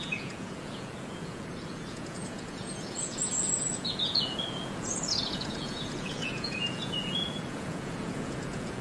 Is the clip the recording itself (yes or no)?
no